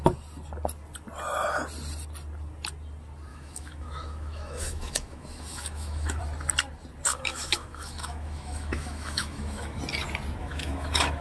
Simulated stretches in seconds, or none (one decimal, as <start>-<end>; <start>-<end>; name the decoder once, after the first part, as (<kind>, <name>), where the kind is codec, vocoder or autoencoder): 3.3-6.2 (autoencoder, DAC-VAE); 7.1-9.8; 10.4-11.2